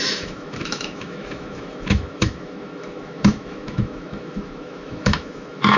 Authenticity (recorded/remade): remade